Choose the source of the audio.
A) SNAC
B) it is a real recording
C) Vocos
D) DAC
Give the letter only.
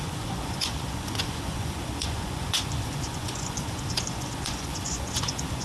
C